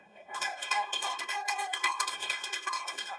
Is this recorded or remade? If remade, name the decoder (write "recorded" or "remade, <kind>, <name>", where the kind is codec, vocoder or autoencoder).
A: remade, codec, SNAC